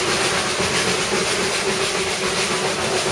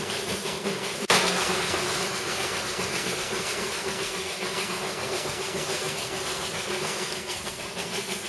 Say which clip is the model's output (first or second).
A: second